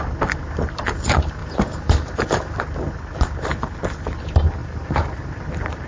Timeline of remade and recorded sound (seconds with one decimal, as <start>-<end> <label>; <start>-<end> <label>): 0.0-1.4 recorded; 1.4-2.6 remade; 2.6-4.6 recorded; 4.6-5.9 remade